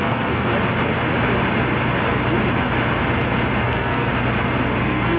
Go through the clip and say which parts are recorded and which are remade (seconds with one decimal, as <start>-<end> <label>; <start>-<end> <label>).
0.0-0.5 remade; 0.5-3.6 recorded; 3.6-4.1 remade; 4.1-4.8 recorded; 4.8-5.2 remade